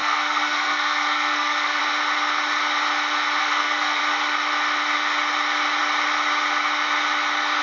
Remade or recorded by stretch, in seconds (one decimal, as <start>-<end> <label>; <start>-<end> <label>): 0.0-1.8 remade; 1.8-3.4 recorded; 3.4-4.0 remade; 4.0-7.6 recorded